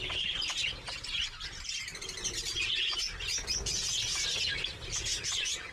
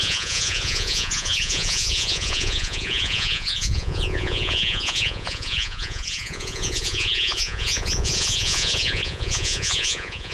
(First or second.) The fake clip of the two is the second